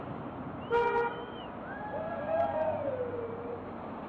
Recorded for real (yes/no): no